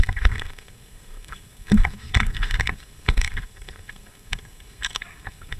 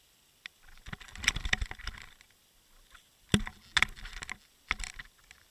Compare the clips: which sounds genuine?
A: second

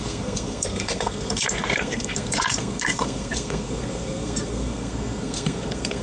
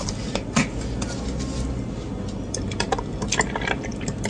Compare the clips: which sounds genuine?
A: second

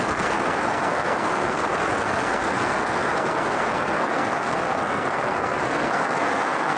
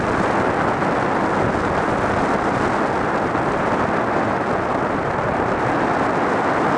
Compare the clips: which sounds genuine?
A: second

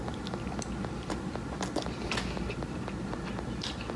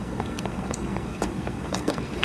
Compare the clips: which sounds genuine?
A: first